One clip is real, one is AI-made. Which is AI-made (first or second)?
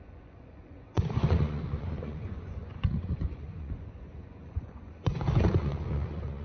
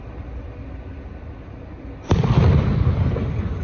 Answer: first